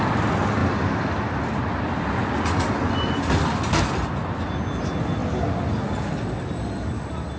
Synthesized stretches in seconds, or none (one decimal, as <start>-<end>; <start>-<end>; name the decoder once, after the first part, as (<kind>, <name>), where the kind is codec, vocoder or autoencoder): none